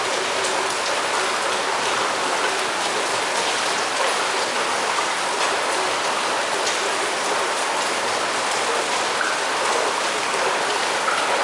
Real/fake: fake